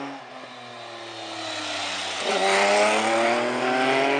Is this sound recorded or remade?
recorded